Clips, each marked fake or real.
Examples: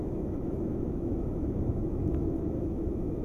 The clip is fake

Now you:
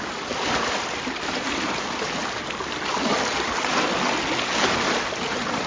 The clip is real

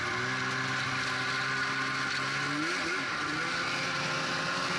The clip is real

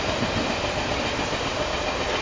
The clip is real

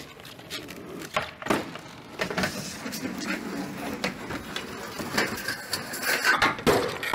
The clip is real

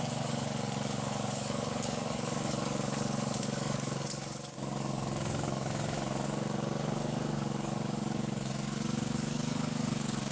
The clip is fake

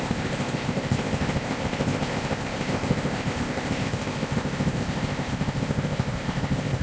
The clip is fake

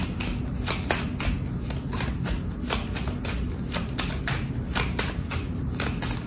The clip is real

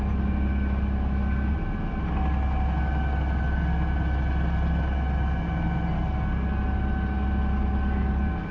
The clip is real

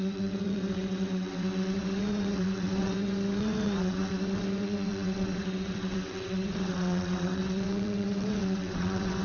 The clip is fake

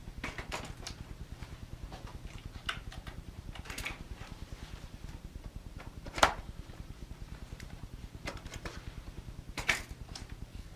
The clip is fake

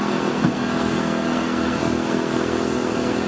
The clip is fake